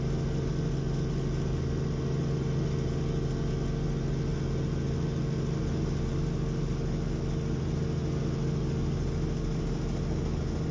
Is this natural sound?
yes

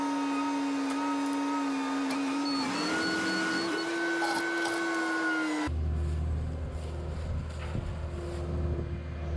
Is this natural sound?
yes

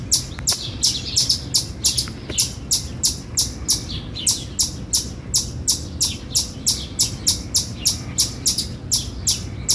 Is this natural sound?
yes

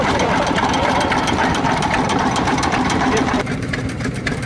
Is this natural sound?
no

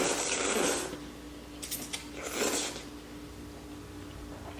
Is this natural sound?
yes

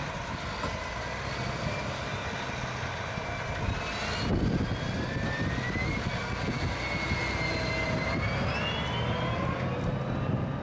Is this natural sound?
yes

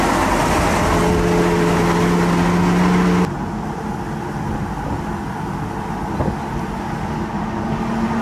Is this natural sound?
yes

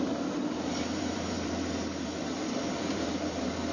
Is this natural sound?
no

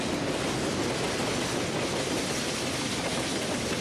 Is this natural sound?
yes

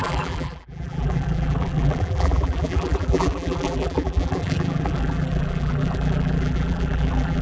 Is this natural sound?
no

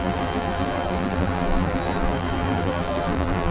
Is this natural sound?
no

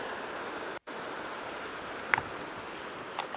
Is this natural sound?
yes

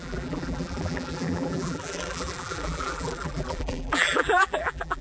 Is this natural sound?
no